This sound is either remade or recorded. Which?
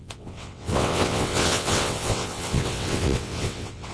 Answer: remade